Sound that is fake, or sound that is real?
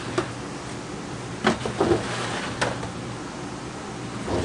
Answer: real